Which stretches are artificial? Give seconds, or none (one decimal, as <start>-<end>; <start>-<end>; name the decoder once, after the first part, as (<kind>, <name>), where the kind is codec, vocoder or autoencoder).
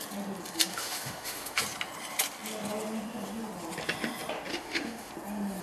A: 0.7-1.6 (autoencoder, DAC-VAE); 4.5-5.1